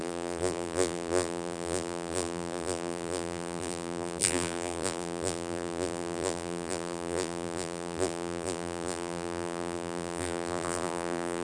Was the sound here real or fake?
fake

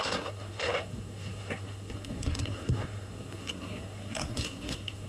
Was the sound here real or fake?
fake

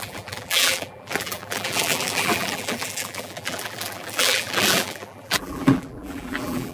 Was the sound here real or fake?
fake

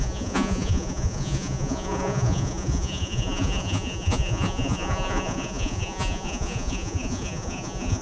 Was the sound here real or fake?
fake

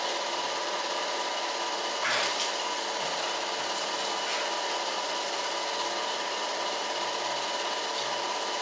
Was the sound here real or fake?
real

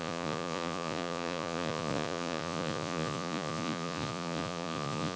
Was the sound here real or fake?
fake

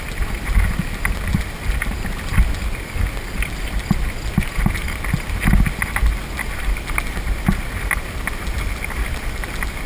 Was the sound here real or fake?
real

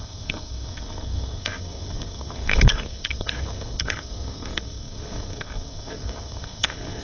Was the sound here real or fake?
fake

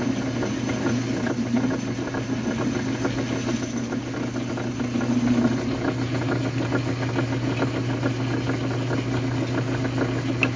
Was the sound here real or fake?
real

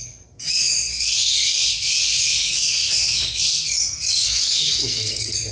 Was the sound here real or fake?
fake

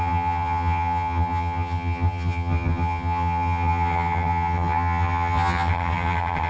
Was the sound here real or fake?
fake